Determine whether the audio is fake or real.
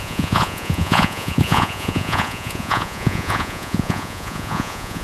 fake